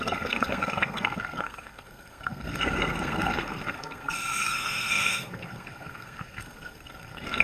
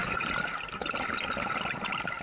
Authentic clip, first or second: second